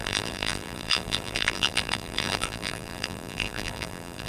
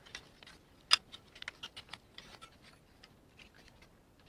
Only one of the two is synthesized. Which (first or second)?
first